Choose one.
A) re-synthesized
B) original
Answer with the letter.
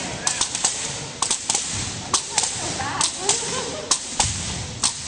B